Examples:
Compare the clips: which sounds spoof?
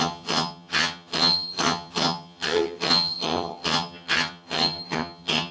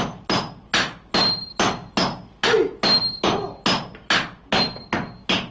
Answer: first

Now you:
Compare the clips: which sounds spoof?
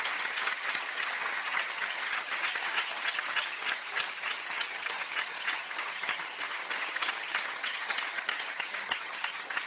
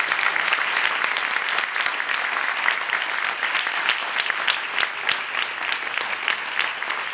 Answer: first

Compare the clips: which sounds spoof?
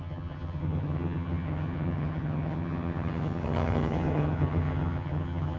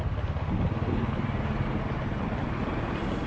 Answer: first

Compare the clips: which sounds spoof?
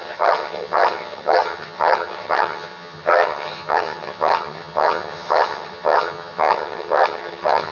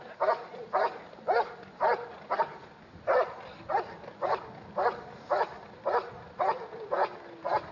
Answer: first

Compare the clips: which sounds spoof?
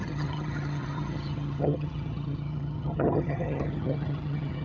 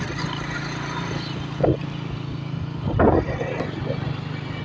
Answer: first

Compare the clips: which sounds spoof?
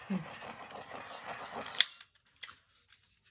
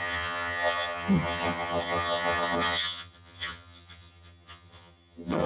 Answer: second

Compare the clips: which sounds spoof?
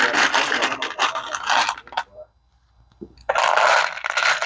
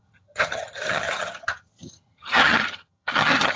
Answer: second